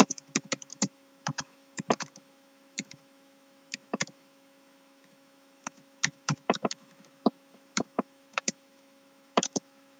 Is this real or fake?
fake